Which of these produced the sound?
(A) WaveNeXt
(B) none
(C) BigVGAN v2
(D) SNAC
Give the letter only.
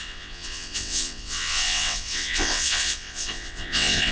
A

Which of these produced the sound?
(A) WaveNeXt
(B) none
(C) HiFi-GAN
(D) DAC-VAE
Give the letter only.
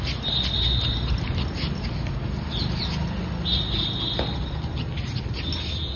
B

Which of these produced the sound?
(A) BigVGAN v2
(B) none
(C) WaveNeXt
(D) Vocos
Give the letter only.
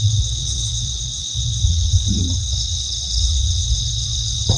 C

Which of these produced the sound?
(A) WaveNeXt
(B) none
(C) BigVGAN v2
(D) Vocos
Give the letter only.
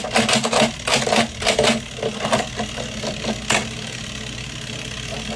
B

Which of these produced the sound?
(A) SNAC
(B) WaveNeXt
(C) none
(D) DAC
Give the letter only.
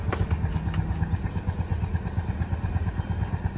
C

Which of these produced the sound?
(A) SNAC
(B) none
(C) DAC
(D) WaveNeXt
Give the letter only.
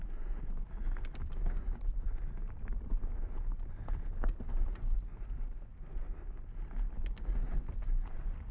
B